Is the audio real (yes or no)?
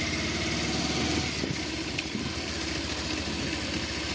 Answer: yes